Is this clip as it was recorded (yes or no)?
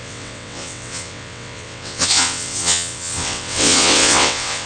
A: no